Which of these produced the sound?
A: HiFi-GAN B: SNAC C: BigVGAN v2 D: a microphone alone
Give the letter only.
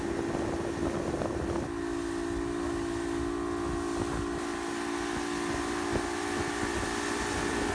D